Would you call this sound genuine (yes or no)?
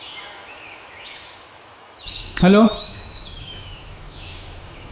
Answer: no